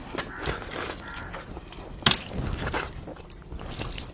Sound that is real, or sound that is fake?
real